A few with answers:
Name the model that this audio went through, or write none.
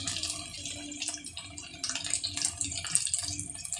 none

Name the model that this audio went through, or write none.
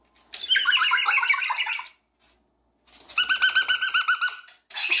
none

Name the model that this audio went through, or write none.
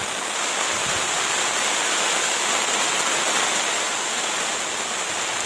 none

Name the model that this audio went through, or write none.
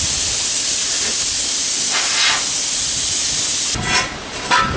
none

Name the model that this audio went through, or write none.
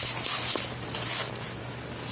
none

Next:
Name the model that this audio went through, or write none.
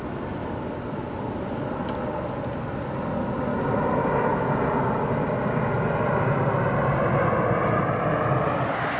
none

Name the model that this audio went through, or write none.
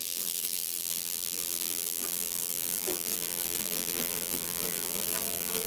vocoder, BigVGAN v2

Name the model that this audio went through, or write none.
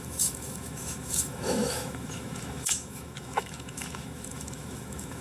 autoencoder, DAC-VAE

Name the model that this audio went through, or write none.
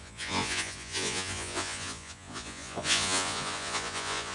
vocoder, Vocos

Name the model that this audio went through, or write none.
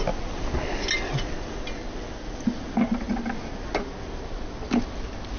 none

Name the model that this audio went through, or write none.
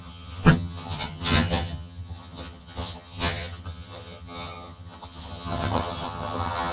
vocoder, HiFi-GAN